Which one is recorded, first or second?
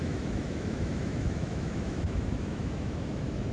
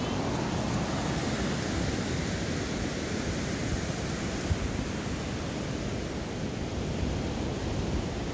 second